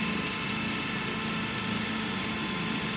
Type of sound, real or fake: real